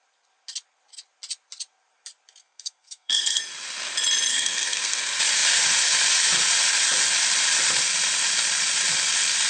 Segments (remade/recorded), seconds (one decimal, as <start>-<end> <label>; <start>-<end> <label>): 0.0-2.4 recorded; 2.4-3.4 remade; 3.4-4.3 recorded; 4.3-5.0 remade; 5.0-9.5 recorded